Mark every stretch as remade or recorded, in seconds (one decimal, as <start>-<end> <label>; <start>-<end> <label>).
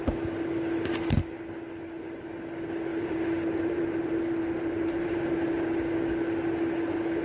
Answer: 0.0-2.9 recorded; 2.9-5.3 remade; 5.3-7.2 recorded